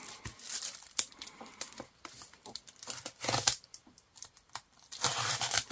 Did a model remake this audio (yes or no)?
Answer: yes